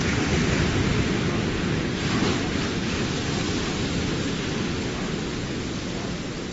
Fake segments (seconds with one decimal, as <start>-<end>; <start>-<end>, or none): none